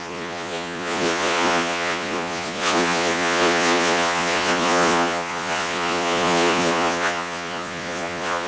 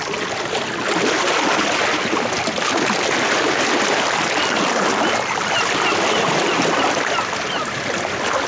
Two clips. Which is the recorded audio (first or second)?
second